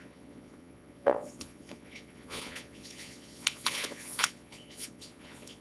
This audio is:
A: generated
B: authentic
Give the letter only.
A